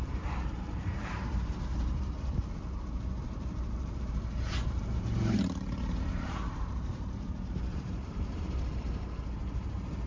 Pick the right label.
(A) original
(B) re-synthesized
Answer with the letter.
B